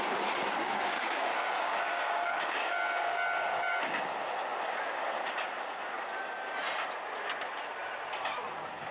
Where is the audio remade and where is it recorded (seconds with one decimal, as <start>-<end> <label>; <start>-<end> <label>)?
0.0-0.6 recorded; 0.6-4.1 remade; 4.1-8.9 recorded